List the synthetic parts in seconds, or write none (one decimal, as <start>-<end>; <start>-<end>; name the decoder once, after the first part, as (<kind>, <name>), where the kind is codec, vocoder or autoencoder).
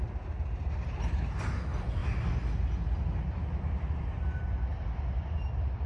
none